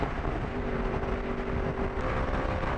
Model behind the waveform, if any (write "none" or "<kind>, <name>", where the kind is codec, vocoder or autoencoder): vocoder, BigVGAN v2